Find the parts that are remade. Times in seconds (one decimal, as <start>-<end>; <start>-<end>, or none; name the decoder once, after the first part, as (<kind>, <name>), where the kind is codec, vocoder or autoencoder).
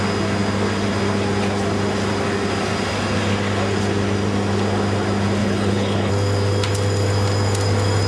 5.4-6.1 (codec, HILCodec)